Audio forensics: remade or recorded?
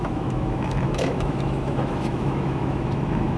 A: remade